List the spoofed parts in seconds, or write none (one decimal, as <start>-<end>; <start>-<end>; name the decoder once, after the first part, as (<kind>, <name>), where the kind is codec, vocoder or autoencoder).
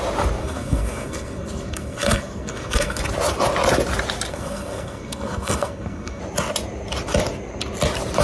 0.4-3.0 (codec, SNAC); 4.3-6.2